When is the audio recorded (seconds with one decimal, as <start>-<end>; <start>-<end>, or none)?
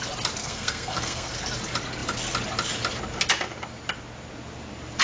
0.0-0.4; 1.4-5.0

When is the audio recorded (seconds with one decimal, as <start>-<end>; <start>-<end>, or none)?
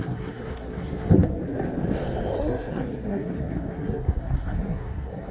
1.4-2.4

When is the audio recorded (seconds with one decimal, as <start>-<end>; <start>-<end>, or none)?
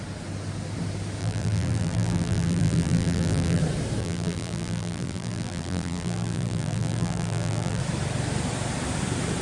0.0-1.2; 3.6-4.0; 7.8-9.4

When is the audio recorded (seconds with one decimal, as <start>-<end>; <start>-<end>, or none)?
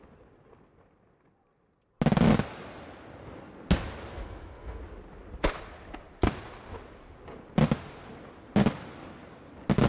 0.0-4.1; 4.8-9.9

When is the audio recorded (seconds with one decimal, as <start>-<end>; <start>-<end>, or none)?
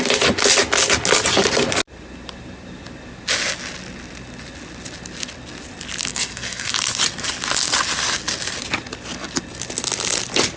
0.0-6.1; 6.7-10.6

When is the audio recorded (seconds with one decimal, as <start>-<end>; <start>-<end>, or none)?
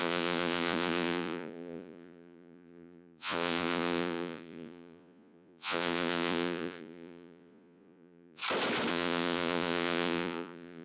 8.4-8.9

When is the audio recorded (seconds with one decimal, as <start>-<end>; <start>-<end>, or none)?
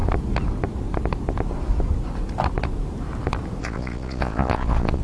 0.0-3.6